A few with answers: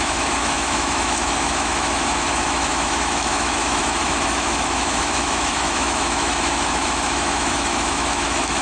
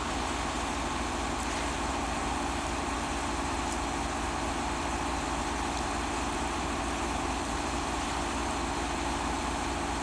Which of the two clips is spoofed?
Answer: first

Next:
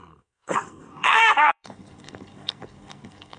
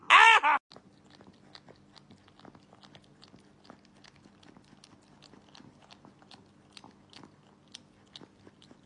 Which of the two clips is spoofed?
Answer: first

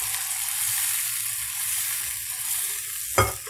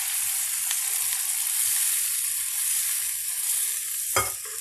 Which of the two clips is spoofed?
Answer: second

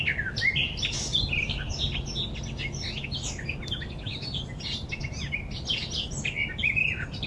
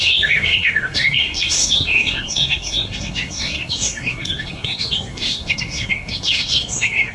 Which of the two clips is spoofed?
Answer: second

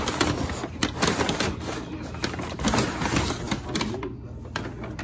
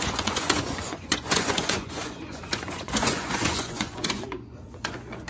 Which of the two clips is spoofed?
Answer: second